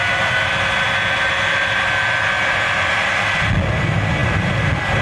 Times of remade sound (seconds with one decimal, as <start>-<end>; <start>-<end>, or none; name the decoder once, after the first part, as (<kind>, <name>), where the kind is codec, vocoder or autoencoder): none